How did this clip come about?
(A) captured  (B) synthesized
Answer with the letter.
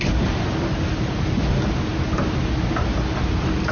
A